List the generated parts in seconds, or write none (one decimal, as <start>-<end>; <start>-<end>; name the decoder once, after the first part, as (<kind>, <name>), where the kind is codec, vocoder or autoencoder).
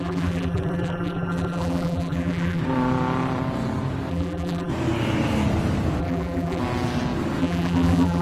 0.0-2.6 (vocoder, BigVGAN v2); 4.1-4.7; 6.0-6.6; 7.4-8.2